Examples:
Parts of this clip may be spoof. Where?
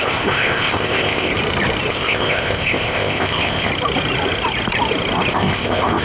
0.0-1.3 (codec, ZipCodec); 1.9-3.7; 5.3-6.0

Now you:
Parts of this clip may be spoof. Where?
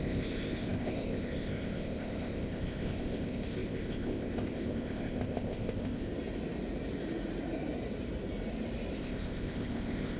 0.0-6.1 (codec, ZipCodec); 9.0-10.2